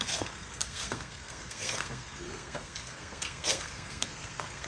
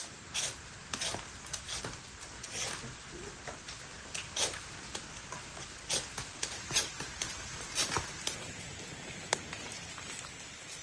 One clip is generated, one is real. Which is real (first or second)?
second